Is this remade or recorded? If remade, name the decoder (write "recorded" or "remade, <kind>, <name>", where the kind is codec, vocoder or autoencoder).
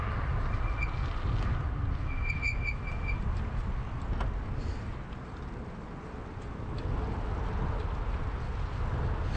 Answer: recorded